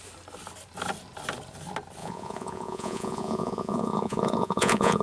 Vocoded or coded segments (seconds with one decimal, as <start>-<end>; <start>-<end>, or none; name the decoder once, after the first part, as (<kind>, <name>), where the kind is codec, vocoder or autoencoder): 2.0-5.0 (vocoder, Vocos)